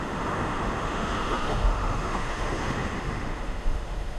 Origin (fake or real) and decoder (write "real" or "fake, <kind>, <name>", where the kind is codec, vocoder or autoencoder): fake, autoencoder, DAC-VAE